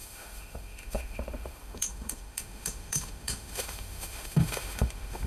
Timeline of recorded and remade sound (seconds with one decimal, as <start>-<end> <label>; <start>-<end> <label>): 0.0-5.3 remade